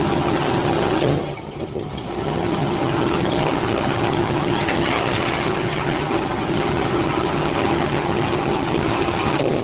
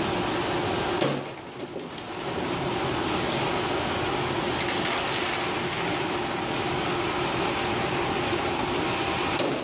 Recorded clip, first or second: second